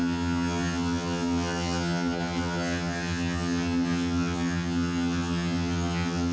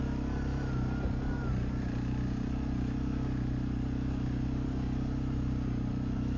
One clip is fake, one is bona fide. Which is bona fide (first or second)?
second